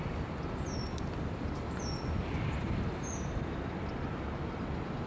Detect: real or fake real